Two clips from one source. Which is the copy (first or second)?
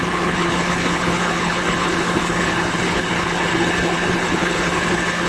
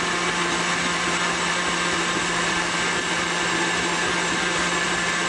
first